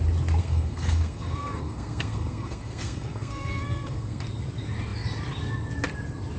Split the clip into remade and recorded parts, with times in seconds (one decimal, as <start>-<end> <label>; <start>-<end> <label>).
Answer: 0.0-0.4 recorded; 0.4-4.2 remade; 4.2-6.4 recorded